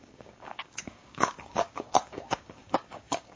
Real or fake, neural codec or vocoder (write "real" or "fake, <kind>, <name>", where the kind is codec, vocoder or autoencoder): fake, codec, DAC